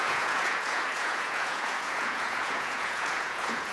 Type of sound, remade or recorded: remade